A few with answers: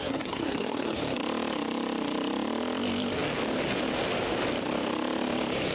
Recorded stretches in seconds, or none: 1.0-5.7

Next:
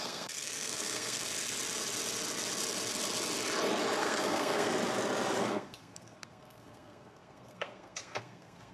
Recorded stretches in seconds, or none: 1.3-4.0; 4.7-5.4

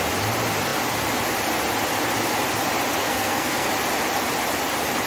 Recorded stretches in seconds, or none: 0.0-3.0; 3.7-5.1

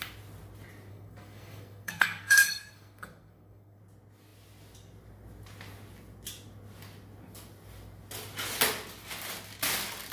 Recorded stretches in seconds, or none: 0.0-0.9; 3.8-10.1

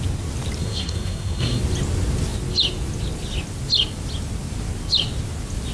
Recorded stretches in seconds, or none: 0.0-0.6; 1.6-5.7

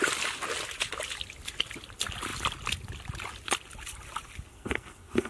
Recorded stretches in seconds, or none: 0.0-4.5

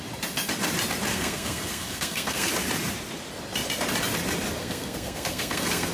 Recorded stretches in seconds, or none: 0.0-1.1; 2.5-4.6